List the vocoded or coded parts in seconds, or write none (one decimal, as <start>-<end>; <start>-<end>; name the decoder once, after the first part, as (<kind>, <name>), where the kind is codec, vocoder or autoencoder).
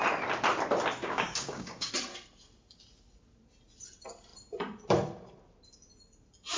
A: 1.0-1.9 (codec, DAC)